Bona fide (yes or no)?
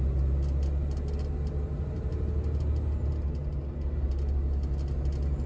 yes